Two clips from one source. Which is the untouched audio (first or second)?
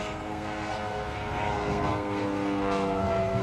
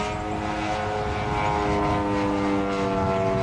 second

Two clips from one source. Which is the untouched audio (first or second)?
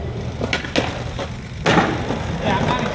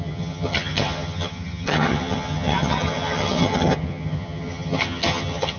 first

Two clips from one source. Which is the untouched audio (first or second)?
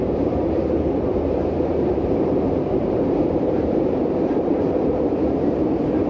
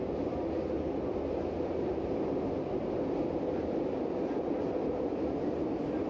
second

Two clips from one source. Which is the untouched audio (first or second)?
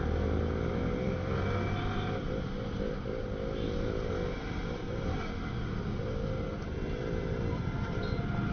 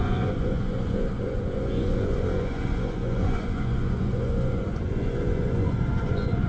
first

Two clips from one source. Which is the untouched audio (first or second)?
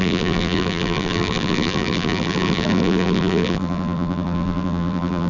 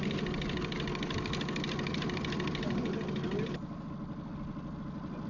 second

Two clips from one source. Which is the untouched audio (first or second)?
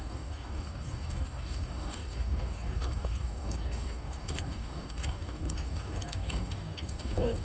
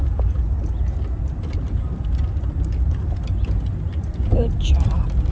second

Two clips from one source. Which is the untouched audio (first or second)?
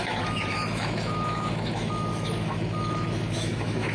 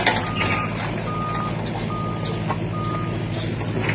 second